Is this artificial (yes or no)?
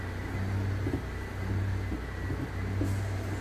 no